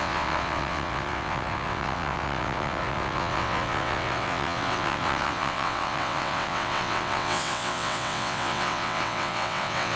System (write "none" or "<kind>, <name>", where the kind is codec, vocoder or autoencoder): vocoder, WaveNeXt